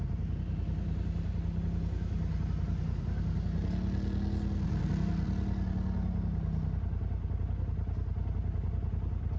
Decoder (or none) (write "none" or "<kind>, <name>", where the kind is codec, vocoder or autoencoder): none